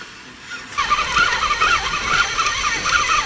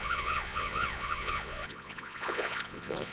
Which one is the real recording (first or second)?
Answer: first